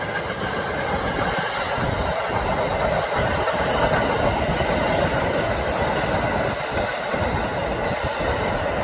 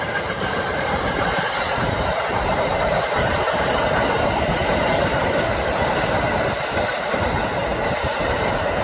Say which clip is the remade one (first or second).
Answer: second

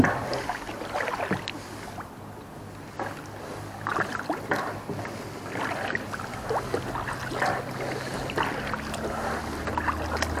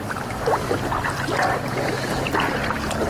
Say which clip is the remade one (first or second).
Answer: second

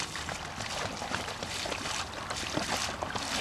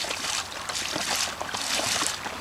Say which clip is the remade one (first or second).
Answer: first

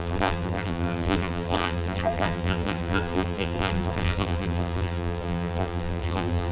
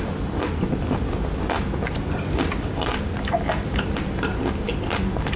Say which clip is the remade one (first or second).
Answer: first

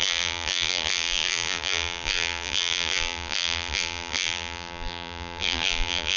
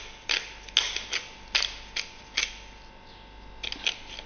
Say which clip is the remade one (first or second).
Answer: first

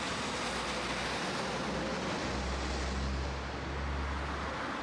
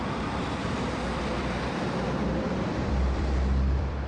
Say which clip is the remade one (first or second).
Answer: second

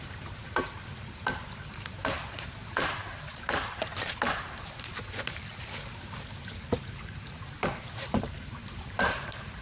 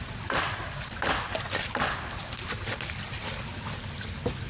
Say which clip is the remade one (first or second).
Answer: first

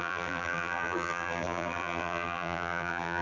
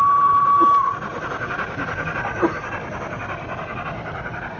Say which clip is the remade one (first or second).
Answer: first